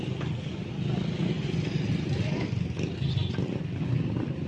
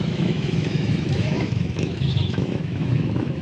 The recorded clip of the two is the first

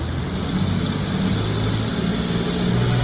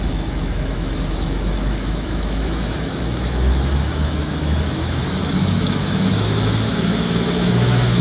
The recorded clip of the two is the first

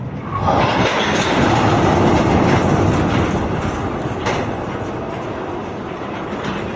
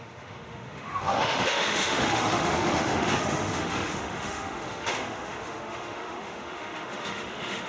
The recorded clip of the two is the first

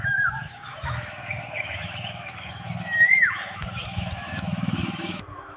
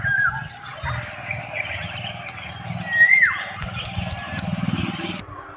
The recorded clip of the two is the second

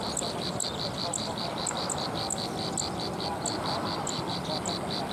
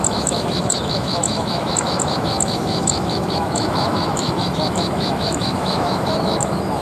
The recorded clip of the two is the first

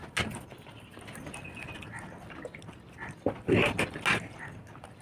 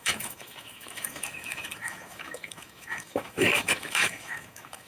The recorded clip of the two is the first